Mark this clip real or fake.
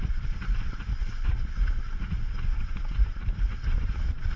fake